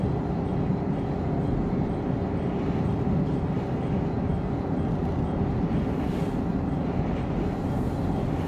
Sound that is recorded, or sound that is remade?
recorded